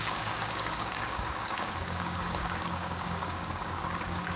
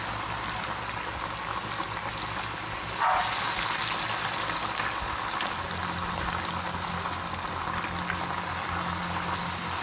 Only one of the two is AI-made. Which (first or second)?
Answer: first